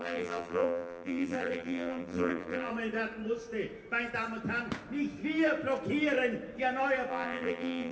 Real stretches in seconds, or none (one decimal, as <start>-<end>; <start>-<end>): 2.7-7.1